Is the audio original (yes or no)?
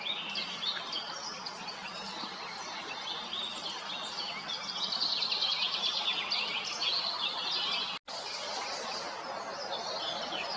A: yes